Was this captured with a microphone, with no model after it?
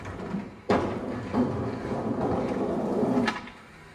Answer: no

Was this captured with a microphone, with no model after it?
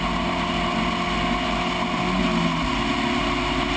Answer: yes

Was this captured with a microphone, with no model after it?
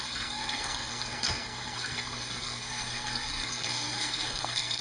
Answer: no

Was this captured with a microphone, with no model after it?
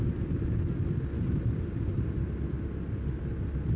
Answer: yes